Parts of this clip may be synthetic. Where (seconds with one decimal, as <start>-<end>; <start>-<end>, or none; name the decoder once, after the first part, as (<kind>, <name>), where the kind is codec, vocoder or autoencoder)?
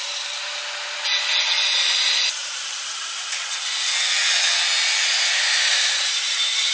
0.0-0.6 (vocoder, BigVGAN v2); 2.0-3.4; 5.7-6.7